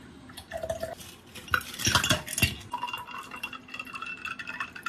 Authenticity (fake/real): real